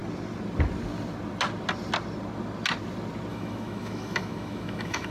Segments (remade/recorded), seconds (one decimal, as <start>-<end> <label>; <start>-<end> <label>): 0.0-3.3 recorded; 3.3-5.1 remade